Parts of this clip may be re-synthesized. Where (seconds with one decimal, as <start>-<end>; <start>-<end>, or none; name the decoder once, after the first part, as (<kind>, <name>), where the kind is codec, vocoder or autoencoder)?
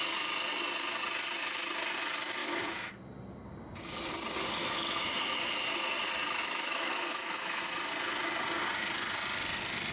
2.4-2.9 (autoencoder, DAC-VAE); 4.6-5.5; 6.4-7.6